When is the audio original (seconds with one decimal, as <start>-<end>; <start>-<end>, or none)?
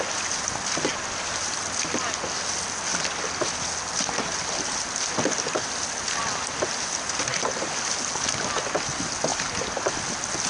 0.0-0.9; 1.6-7.3; 7.9-9.3; 9.9-10.5